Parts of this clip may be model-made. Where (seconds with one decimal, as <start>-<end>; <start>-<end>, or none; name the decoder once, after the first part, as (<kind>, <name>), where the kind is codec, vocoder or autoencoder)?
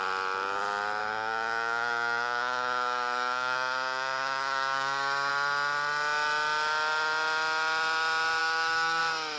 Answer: 1.0-5.3 (codec, DAC); 8.4-9.0